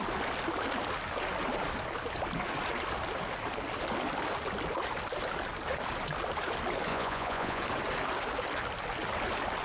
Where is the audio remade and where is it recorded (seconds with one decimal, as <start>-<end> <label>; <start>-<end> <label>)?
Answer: 0.0-6.9 recorded; 6.9-7.6 remade; 7.6-9.6 recorded